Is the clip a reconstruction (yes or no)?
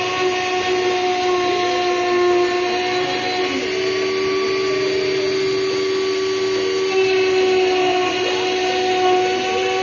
no